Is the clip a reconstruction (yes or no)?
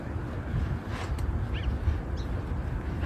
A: no